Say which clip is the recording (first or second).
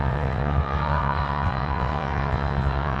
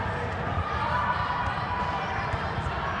second